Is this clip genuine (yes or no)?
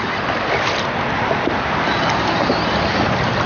yes